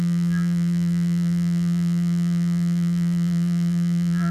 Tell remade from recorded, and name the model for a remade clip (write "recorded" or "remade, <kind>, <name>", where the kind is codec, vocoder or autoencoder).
remade, vocoder, BigVGAN v2